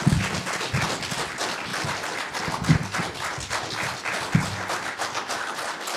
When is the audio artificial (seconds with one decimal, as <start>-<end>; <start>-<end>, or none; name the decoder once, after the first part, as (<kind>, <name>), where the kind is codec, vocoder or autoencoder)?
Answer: none